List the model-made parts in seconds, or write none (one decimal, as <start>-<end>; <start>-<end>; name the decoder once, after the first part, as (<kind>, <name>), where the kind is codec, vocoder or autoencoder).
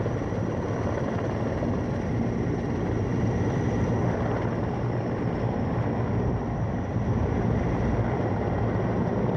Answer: 3.1-3.7 (vocoder, BigVGAN v2)